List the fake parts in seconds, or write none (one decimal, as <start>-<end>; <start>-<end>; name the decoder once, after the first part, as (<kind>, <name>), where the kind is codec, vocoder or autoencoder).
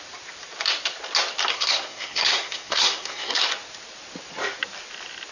1.5-3.4 (codec, SNAC)